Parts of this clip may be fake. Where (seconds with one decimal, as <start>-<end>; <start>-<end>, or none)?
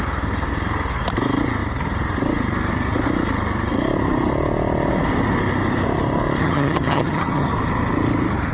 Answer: 6.4-7.5